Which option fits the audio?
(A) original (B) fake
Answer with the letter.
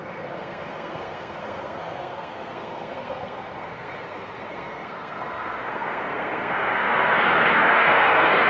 B